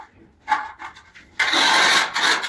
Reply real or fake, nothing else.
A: real